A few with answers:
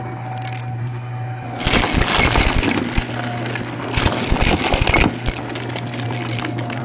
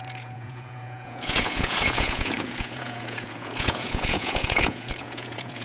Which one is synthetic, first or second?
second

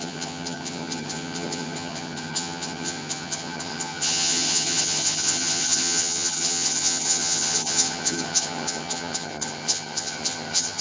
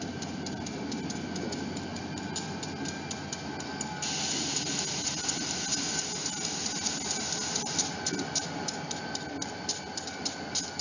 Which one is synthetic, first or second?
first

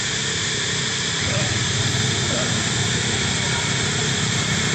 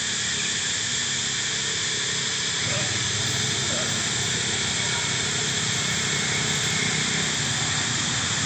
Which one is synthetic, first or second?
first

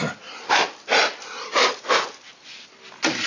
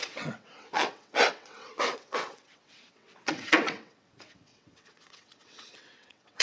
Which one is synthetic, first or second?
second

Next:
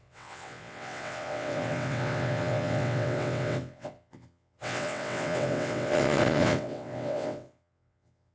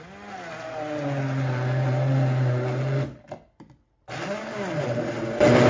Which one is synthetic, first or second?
first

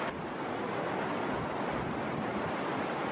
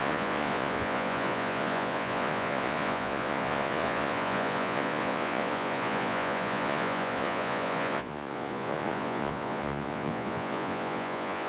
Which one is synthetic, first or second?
second